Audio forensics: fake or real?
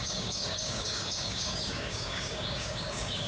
fake